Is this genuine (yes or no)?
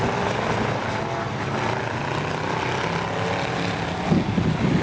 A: yes